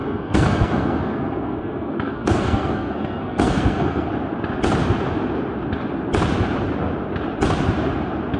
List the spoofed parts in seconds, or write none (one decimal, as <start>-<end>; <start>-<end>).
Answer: 0.0-4.1